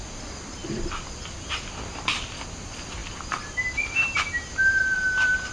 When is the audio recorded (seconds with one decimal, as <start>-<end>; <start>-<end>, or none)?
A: 0.0-5.5